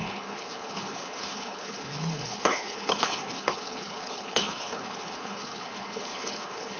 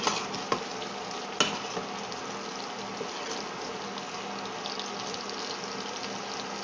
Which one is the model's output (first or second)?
first